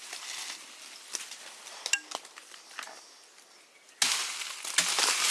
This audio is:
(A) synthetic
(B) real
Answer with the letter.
B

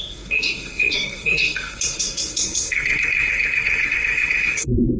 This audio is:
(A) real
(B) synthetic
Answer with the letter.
B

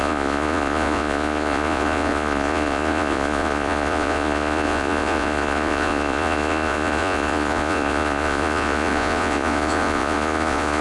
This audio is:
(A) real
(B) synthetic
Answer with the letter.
B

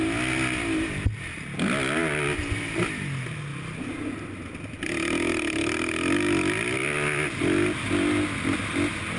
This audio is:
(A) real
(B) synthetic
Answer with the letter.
A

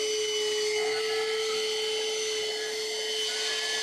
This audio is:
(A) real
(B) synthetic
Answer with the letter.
A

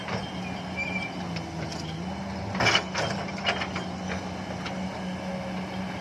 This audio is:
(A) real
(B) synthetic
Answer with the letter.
A